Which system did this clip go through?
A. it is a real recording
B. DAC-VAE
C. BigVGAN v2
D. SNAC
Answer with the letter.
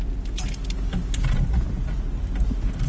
A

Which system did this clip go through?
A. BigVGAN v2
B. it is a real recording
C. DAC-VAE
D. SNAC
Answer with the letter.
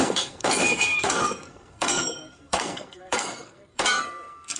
D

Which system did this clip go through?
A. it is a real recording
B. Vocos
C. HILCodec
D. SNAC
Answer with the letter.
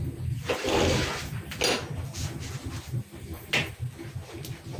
A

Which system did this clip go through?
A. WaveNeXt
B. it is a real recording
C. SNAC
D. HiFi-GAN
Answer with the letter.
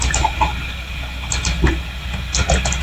B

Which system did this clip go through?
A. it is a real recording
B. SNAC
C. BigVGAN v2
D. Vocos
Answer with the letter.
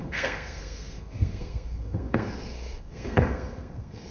B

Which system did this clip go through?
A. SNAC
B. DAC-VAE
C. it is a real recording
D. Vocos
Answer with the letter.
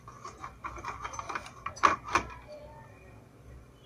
C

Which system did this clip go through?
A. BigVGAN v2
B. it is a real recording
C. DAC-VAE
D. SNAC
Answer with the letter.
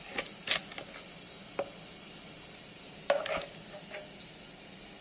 B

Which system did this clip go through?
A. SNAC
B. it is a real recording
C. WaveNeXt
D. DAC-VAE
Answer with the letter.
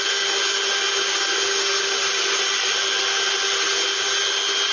B